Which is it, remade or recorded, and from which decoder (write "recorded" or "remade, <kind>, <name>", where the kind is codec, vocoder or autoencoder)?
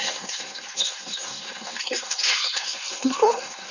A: remade, codec, SNAC